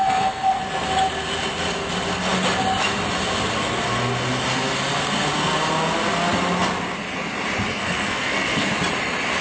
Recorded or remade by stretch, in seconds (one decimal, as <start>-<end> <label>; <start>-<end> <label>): 0.0-0.6 remade; 0.6-7.7 recorded; 7.7-8.7 remade; 8.7-9.4 recorded